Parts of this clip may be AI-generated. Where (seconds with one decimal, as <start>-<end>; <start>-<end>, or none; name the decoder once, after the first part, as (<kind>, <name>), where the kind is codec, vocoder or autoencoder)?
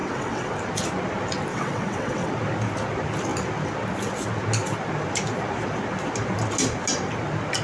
0.0-0.5 (vocoder, WaveNeXt); 1.5-2.3